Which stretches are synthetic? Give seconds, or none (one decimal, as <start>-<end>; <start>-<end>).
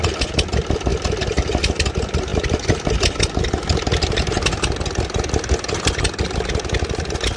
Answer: none